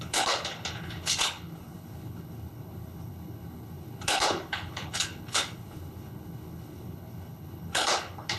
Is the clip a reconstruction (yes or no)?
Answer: yes